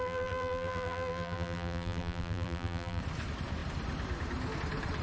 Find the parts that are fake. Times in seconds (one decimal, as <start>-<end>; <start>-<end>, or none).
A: 0.0-3.0